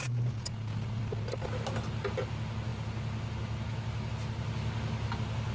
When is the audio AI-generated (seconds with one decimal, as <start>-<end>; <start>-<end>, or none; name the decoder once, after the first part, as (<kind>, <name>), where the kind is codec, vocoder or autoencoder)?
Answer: none